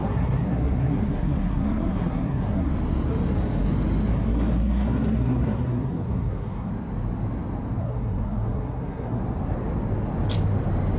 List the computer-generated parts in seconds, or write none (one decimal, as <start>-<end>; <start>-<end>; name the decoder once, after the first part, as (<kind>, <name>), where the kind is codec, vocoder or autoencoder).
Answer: 0.0-2.7 (codec, SNAC); 4.1-6.7; 7.8-9.2